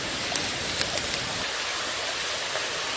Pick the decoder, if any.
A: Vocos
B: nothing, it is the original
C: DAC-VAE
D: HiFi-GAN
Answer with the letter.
B